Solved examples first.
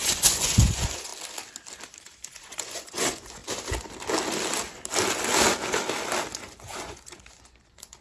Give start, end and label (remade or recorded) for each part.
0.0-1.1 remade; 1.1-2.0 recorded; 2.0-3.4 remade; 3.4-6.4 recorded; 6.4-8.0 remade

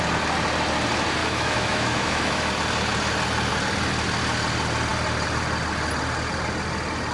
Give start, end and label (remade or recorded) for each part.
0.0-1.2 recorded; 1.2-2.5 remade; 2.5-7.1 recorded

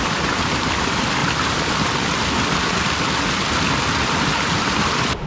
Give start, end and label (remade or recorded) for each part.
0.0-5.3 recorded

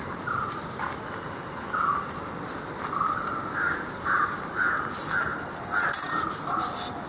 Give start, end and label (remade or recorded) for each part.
0.0-7.1 recorded

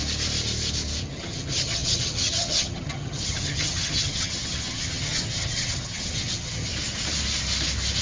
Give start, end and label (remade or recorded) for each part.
0.0-1.0 recorded; 1.0-6.7 remade; 6.7-8.0 recorded

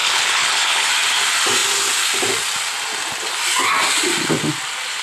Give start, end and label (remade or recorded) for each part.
0.0-0.9 remade; 0.9-5.0 recorded